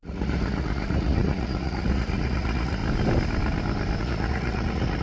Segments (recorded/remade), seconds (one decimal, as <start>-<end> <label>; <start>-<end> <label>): 0.0-2.8 remade; 2.8-4.0 recorded; 4.0-5.0 remade

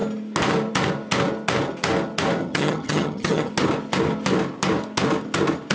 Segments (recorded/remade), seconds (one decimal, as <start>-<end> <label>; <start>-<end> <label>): 0.0-2.4 recorded; 2.4-3.5 remade; 3.5-5.7 recorded

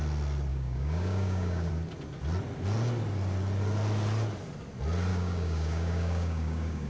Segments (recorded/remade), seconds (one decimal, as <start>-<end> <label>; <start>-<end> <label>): 0.0-0.5 recorded; 0.5-1.7 remade; 1.7-5.1 recorded; 5.1-6.9 remade

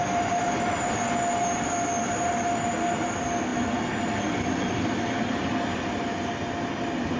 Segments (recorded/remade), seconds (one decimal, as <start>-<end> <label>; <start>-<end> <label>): 0.0-7.2 recorded

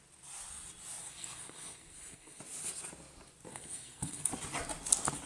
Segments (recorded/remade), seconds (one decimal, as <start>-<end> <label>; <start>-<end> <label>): 0.0-1.0 recorded; 1.0-2.4 remade; 2.4-3.5 recorded; 3.5-4.3 remade; 4.3-5.3 recorded

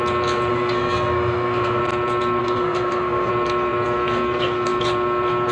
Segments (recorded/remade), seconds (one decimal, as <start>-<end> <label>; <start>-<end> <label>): 0.0-0.5 recorded; 0.5-1.8 remade; 1.8-2.4 recorded; 2.4-3.3 remade; 3.3-5.5 recorded

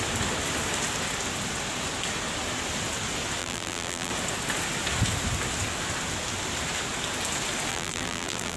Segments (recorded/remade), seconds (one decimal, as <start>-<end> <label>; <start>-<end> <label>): 0.0-3.4 recorded; 3.4-4.1 remade; 4.1-7.7 recorded; 7.7-8.6 remade